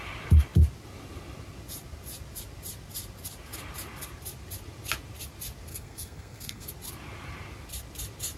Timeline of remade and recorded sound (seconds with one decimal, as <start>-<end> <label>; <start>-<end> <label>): 0.0-5.7 recorded; 5.7-6.7 remade; 6.7-8.4 recorded